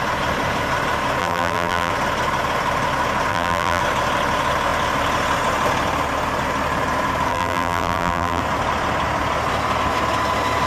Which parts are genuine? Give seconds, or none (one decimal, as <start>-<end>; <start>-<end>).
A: 0.0-1.2; 1.9-3.3; 3.8-7.3; 8.4-10.7

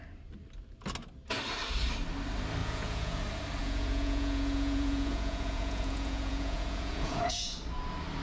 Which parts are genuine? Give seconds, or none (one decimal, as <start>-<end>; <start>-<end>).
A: 0.0-2.6; 3.2-3.6; 7.6-8.2

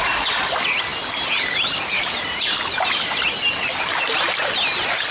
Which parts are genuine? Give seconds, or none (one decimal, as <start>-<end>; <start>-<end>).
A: 0.0-5.1

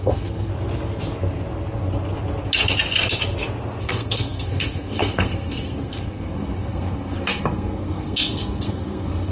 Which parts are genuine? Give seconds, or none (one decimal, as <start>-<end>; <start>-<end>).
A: 0.5-3.8

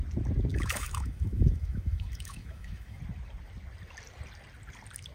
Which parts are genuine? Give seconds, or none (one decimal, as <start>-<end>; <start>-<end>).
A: 0.0-0.5; 3.0-5.1